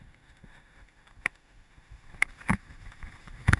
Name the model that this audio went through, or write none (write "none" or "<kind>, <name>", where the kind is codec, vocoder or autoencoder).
autoencoder, DAC-VAE